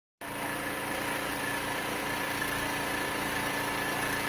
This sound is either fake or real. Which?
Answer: real